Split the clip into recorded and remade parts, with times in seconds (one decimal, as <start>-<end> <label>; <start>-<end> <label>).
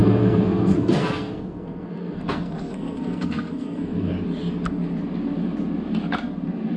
0.0-4.1 remade; 4.1-6.8 recorded